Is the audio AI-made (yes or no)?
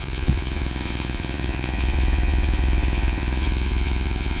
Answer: yes